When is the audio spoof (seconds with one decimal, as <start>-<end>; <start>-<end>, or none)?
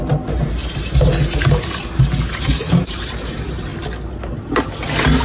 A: 0.0-3.7